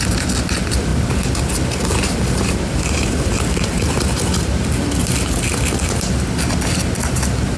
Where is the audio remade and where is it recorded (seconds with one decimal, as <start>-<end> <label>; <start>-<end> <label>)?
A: 0.0-7.6 recorded